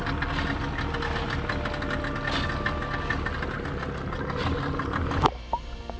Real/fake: real